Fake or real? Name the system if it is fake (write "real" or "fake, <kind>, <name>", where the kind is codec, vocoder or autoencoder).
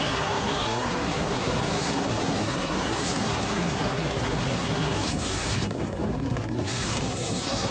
fake, codec, SNAC